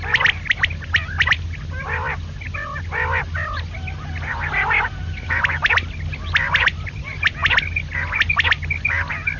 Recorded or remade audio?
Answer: recorded